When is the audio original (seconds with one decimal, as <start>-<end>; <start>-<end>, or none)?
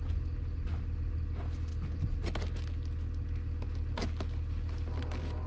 0.0-5.5